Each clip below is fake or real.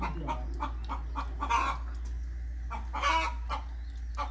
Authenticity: real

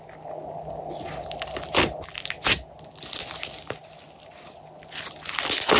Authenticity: real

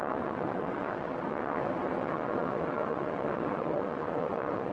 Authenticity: fake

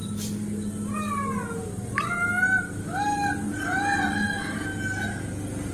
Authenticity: real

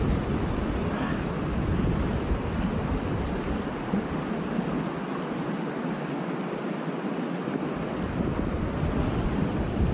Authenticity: real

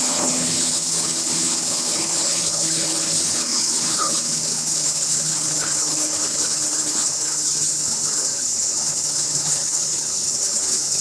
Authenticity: fake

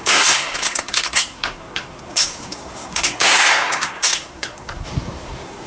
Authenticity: fake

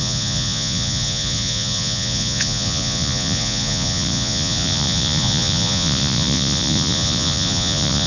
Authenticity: fake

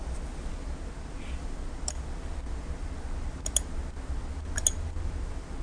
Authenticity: real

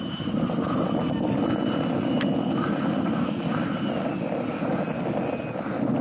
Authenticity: real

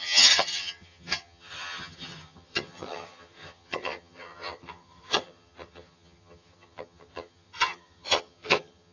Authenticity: fake